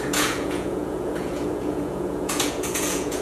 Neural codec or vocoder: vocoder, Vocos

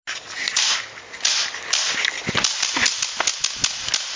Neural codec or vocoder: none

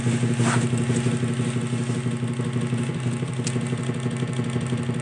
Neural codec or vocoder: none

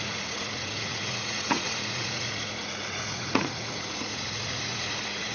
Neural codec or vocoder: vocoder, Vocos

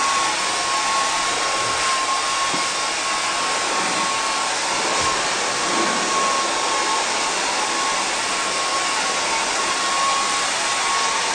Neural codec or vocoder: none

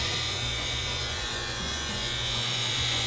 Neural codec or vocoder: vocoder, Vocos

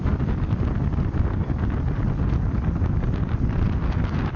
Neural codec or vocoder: none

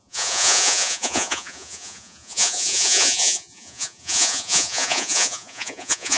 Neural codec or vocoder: vocoder, Vocos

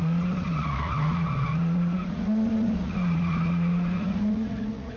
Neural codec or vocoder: vocoder, Vocos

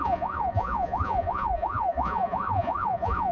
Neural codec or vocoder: vocoder, Vocos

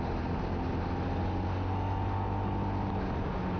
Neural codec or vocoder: none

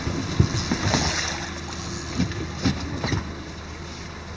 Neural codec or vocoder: none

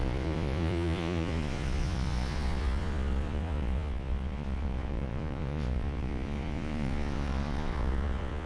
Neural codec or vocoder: vocoder, Vocos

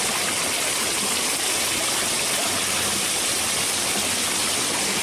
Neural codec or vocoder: none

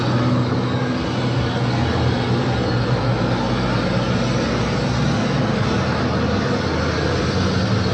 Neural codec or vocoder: none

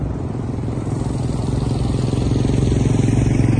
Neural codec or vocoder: none